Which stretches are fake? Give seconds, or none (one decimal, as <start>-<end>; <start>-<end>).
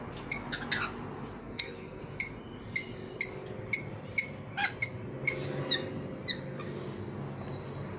1.4-2.0